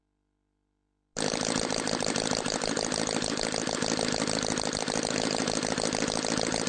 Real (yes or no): yes